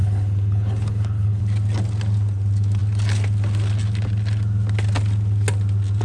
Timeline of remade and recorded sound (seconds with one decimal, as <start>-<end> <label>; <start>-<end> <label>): 0.0-1.4 remade; 1.4-6.0 recorded